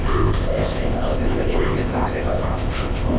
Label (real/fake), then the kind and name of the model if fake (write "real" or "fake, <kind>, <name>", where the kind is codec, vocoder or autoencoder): fake, codec, ZipCodec